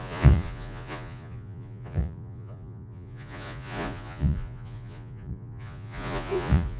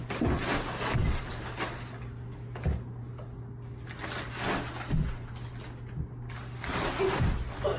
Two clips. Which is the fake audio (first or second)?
first